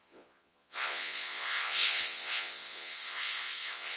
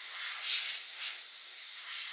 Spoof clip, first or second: first